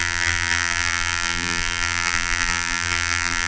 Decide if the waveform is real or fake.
fake